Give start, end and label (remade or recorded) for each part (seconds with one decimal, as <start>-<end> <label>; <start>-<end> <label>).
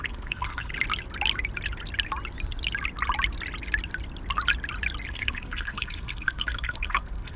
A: 0.0-0.7 remade; 0.7-5.1 recorded; 5.1-7.4 remade